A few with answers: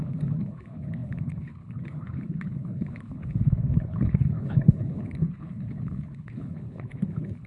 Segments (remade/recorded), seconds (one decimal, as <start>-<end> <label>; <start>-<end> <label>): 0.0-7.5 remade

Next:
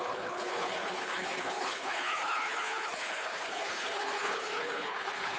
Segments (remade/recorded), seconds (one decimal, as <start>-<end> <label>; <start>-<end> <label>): 0.0-5.4 remade

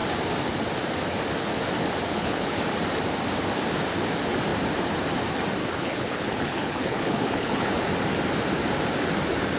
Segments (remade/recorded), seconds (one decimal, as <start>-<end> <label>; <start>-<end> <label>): 0.0-2.1 recorded; 2.1-2.6 remade; 2.6-5.6 recorded; 5.6-7.7 remade; 7.7-9.6 recorded

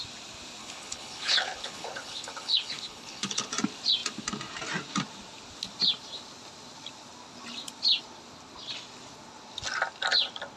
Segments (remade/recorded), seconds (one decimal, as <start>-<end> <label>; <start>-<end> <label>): 0.0-0.6 recorded; 0.6-3.5 remade; 3.5-10.6 recorded

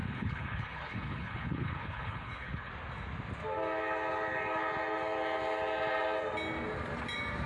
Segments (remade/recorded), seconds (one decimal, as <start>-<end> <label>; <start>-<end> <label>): 0.0-2.7 remade; 2.7-7.5 recorded

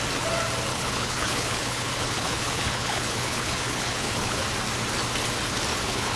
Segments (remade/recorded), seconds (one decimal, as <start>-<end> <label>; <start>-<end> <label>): 0.0-0.7 recorded; 0.7-4.4 remade; 4.4-5.7 recorded; 5.7-6.2 remade

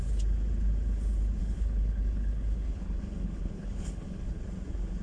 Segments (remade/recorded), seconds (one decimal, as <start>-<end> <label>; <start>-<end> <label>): 0.0-1.4 recorded; 1.4-4.4 remade; 4.4-5.0 recorded